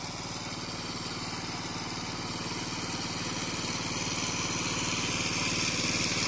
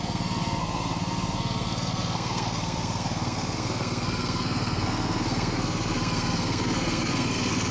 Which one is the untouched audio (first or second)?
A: first